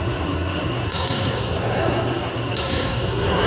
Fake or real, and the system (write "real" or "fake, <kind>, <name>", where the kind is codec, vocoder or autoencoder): fake, codec, SNAC